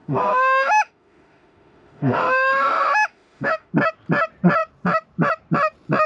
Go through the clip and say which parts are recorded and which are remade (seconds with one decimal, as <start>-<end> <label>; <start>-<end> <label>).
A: 0.0-3.7 remade; 3.7-6.1 recorded